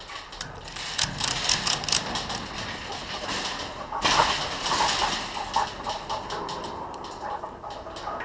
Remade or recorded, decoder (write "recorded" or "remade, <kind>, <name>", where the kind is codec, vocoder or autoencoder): recorded